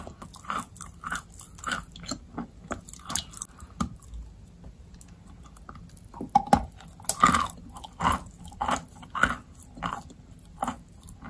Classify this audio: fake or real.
real